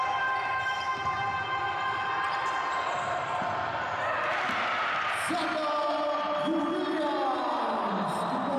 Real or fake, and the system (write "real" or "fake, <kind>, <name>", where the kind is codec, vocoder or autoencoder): real